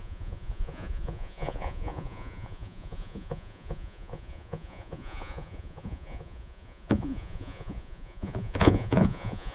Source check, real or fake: fake